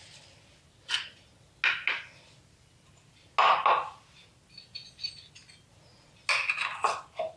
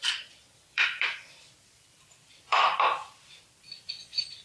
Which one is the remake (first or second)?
second